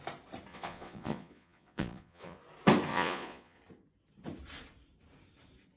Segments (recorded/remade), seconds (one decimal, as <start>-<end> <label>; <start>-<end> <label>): 0.0-0.5 recorded; 0.5-2.4 remade; 2.4-2.9 recorded; 2.9-3.6 remade; 3.6-5.8 recorded